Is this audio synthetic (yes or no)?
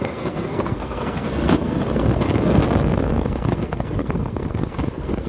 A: yes